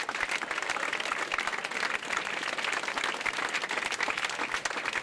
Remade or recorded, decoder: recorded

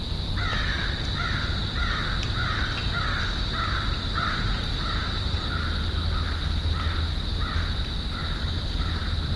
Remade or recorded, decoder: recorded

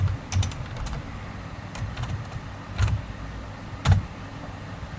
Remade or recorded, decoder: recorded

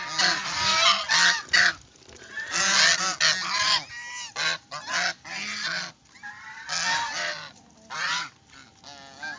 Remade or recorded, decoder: recorded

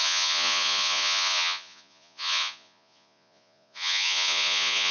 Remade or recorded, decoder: remade, vocoder, Vocos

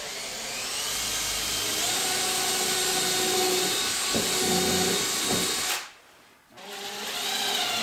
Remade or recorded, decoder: recorded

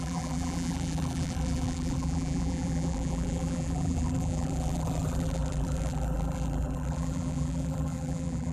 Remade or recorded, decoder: remade, vocoder, BigVGAN v2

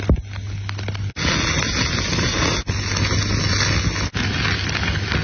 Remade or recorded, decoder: recorded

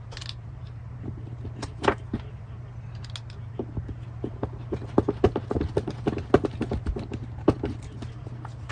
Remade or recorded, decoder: recorded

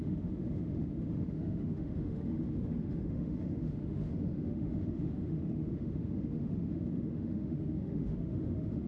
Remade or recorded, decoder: remade, autoencoder, DAC-VAE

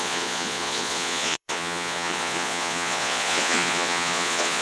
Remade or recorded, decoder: remade, vocoder, Vocos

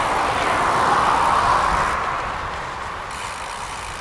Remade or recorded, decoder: recorded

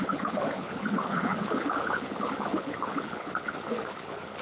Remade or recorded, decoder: remade, codec, HILCodec